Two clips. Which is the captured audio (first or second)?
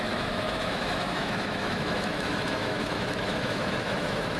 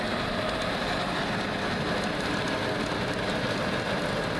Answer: second